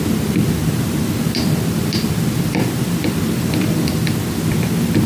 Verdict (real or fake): fake